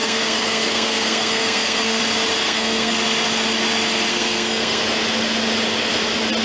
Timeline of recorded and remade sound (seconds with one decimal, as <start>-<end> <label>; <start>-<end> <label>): 0.0-2.0 remade; 2.0-2.4 recorded; 2.4-2.9 remade; 2.9-4.1 recorded; 4.1-4.8 remade; 4.8-6.4 recorded